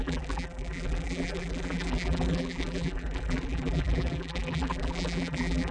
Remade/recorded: remade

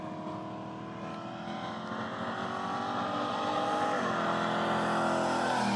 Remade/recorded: recorded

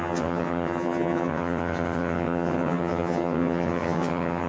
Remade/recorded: remade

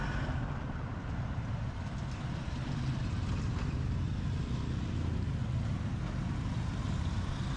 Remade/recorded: recorded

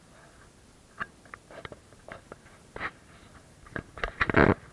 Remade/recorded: recorded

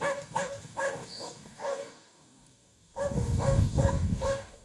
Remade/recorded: remade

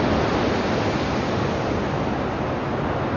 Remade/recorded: recorded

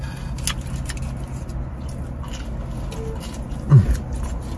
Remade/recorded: recorded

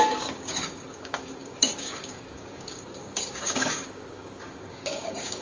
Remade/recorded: remade